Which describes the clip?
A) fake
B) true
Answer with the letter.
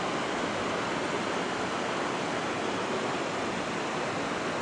B